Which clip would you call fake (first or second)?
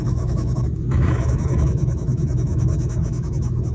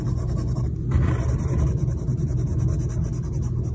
first